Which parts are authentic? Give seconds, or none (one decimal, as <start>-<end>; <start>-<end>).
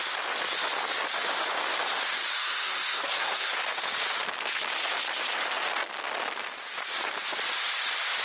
0.0-2.4; 3.5-8.2